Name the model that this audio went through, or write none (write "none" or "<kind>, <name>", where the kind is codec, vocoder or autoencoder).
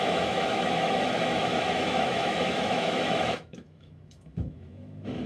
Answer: autoencoder, DAC-VAE